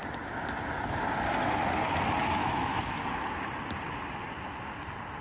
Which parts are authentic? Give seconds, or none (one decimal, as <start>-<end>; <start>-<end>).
0.0-2.4; 3.0-5.2